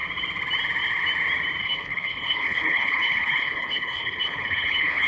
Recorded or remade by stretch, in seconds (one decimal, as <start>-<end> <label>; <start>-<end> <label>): 0.0-1.6 recorded; 1.6-5.1 remade